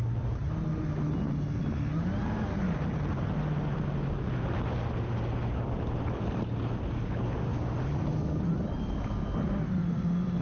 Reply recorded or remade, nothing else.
recorded